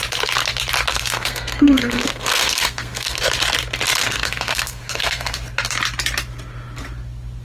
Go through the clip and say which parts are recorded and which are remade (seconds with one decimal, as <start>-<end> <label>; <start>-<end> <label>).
0.0-0.9 recorded; 0.9-3.2 remade; 3.2-4.0 recorded; 4.0-5.3 remade; 5.3-7.4 recorded